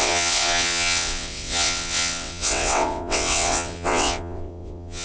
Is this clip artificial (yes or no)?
yes